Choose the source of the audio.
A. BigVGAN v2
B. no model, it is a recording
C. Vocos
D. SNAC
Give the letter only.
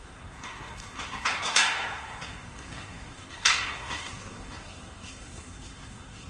D